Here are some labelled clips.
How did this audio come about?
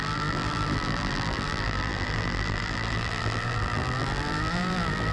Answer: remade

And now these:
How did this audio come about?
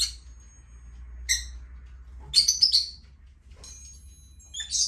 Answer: recorded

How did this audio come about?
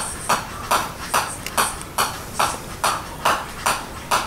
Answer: recorded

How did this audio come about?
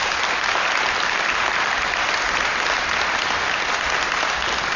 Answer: recorded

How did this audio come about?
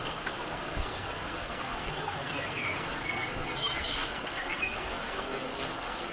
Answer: remade